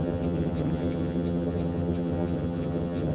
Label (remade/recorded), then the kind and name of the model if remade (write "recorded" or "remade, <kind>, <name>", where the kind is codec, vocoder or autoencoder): remade, vocoder, HiFi-GAN